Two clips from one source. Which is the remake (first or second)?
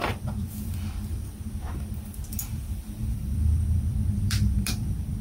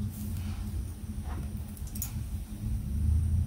first